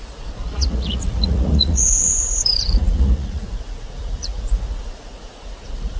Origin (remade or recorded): remade